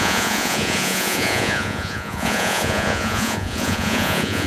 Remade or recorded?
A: remade